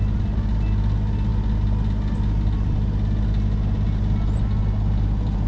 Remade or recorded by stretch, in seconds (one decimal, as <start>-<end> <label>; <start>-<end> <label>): 0.0-5.5 recorded